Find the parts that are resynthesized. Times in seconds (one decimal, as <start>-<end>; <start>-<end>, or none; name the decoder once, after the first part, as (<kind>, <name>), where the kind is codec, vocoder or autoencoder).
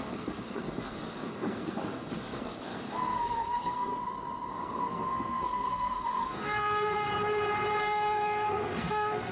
0.0-3.9 (codec, SNAC); 4.5-7.1; 7.8-9.3